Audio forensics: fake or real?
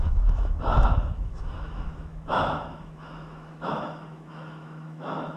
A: fake